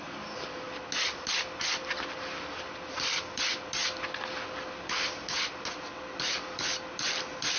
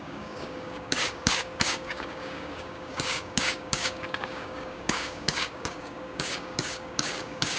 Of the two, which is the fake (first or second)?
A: second